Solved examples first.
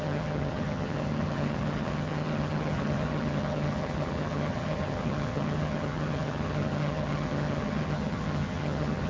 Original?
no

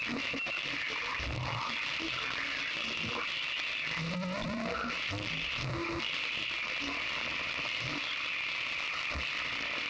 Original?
yes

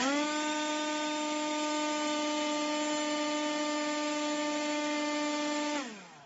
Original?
yes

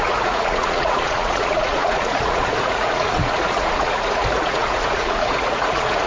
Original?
no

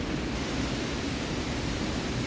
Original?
yes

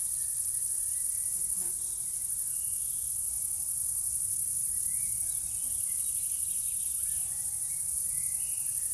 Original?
yes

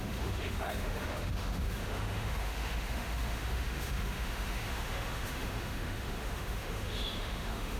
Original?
no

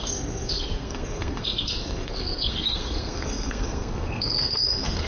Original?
no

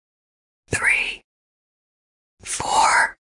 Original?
yes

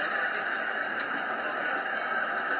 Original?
yes